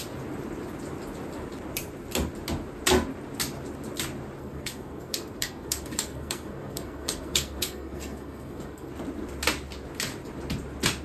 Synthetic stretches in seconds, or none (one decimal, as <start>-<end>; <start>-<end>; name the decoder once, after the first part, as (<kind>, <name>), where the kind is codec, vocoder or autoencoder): 4.4-8.9 (codec, SNAC)